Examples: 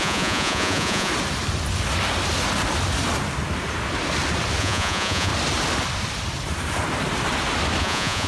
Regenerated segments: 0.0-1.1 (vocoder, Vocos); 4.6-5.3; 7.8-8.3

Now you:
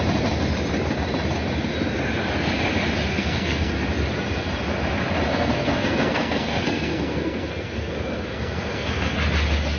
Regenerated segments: 3.1-3.7 (codec, SNAC); 5.3-9.2

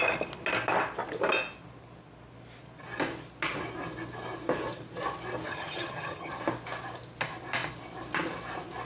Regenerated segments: 5.5-6.3 (vocoder, HiFi-GAN)

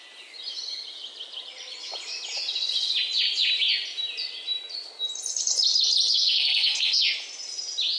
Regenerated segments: 6.1-7.0 (codec, SNAC)

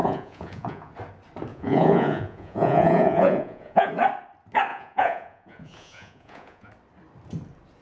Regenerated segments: 0.0-0.9 (vocoder, Vocos); 1.5-3.9; 4.7-6.7

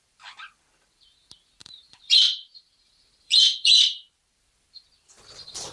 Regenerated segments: 1.6-4.5 (vocoder, BigVGAN v2)